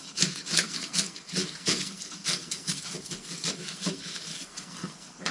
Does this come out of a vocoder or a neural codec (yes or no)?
yes